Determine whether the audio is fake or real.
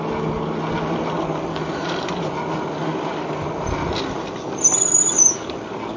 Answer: real